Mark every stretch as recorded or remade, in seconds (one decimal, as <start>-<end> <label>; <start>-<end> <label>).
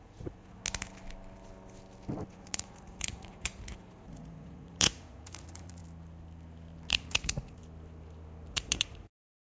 0.0-0.6 remade; 0.6-2.3 recorded; 2.3-5.8 remade; 5.8-6.9 recorded; 6.9-7.6 remade; 7.6-8.5 recorded; 8.5-9.6 remade